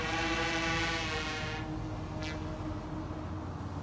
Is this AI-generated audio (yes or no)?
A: no